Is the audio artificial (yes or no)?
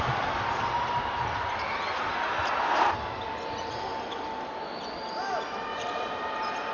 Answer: no